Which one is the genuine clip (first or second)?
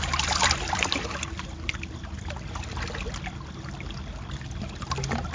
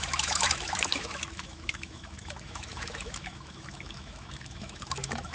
first